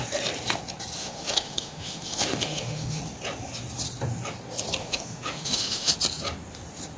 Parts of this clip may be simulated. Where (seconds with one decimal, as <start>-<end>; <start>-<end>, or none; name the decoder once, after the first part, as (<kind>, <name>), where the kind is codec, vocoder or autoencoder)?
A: 1.0-3.0 (autoencoder, DAC-VAE); 4.8-5.9